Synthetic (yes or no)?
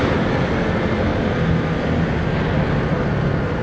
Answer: no